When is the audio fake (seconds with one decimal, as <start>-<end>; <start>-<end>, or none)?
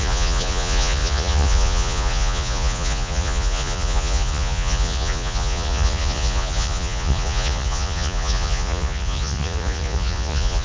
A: 0.0-10.6